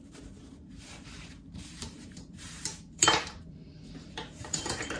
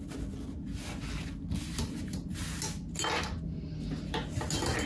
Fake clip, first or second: first